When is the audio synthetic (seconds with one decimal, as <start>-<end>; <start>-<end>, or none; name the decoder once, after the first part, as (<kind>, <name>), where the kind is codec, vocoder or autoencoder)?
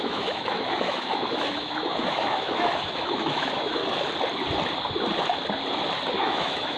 0.0-3.8 (autoencoder, DAC-VAE); 6.2-6.8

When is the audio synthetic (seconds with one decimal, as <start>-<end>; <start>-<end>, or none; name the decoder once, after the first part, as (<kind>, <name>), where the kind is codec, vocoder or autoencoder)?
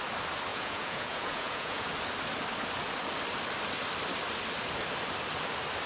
0.5-1.9 (vocoder, Vocos)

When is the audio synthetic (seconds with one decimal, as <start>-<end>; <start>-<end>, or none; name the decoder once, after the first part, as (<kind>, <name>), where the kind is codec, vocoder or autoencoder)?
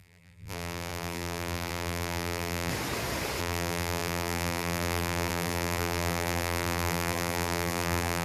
0.0-2.7 (vocoder, BigVGAN v2); 3.4-8.2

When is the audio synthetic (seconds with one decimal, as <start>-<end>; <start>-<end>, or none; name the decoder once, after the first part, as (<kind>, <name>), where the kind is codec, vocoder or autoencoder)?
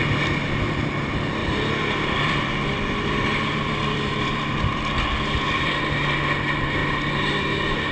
1.4-5.8 (vocoder, BigVGAN v2)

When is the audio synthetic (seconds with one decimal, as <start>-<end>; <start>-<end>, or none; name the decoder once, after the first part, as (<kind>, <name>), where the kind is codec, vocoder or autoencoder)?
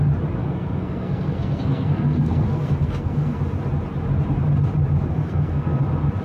0.4-3.4 (codec, SNAC); 5.1-5.8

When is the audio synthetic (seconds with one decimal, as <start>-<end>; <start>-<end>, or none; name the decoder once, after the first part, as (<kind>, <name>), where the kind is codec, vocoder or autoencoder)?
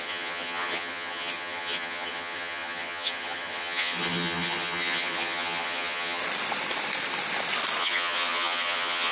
0.0-6.2 (vocoder, HiFi-GAN); 7.8-9.1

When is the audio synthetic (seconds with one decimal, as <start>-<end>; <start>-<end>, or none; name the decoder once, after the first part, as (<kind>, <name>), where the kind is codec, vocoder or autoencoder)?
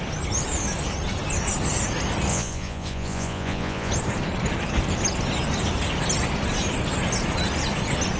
2.3-3.9 (vocoder, Vocos)